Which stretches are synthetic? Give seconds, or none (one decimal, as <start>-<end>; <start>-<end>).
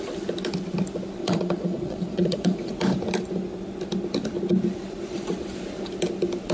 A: 1.2-2.7